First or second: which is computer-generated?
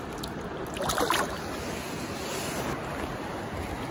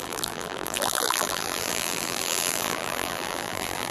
second